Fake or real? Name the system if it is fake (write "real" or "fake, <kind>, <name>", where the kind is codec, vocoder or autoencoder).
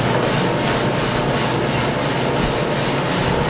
real